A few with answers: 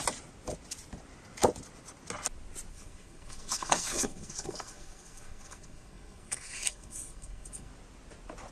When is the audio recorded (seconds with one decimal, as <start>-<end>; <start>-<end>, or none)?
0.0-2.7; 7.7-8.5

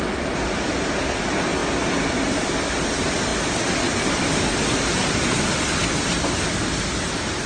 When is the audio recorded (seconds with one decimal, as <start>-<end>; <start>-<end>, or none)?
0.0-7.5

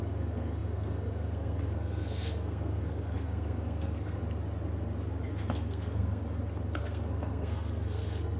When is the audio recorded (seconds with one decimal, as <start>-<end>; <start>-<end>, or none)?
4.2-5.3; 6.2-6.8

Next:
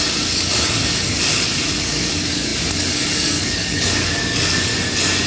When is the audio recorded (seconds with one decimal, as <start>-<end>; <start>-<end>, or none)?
4.7-5.3

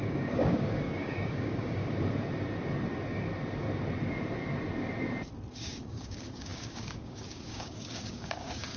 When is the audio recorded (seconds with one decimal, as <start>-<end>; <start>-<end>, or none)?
1.8-5.5

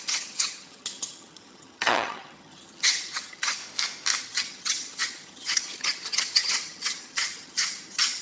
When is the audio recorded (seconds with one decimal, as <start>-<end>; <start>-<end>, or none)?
3.6-4.2